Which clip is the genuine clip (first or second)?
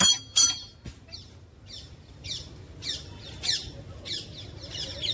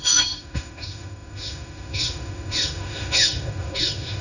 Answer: first